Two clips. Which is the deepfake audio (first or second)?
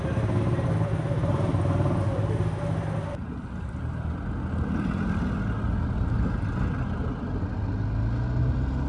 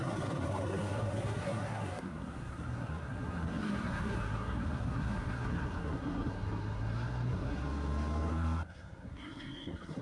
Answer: second